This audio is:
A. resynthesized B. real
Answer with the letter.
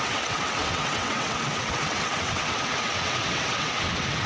A